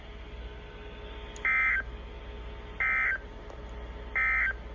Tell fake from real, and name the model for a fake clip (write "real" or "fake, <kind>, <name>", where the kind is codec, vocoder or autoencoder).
real